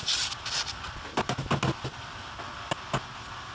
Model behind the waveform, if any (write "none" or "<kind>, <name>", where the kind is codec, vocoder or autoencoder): none